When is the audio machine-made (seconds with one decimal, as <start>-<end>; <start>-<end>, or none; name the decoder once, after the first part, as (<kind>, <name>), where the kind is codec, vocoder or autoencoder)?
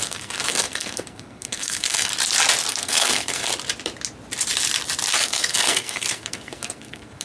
0.0-2.1 (codec, SNAC); 2.7-3.5; 5.1-7.2